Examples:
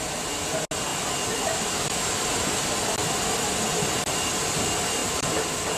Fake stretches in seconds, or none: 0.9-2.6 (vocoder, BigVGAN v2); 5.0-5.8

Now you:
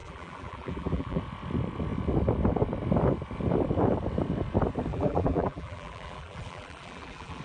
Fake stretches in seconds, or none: 0.0-1.2 (vocoder, BigVGAN v2); 4.9-7.4

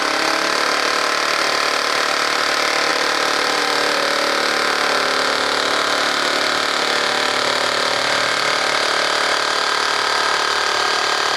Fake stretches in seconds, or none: 2.9-3.6 (vocoder, BigVGAN v2)

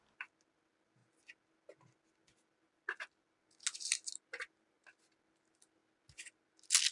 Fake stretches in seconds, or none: none

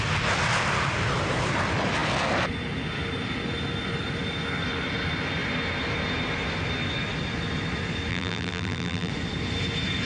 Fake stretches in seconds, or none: 8.1-9.1 (vocoder, BigVGAN v2)